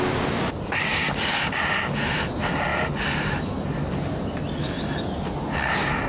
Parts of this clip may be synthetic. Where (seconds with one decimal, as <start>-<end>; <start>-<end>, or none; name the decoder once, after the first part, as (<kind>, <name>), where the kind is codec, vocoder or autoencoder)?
none